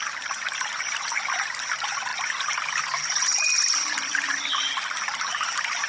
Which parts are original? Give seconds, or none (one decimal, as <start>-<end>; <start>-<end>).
0.0-5.9